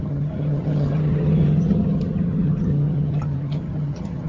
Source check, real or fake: fake